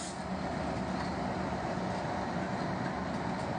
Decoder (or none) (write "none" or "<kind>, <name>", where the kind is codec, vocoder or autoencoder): none